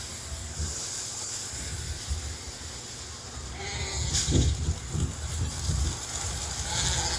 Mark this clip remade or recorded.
recorded